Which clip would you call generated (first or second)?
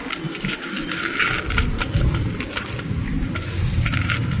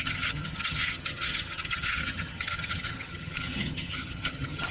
second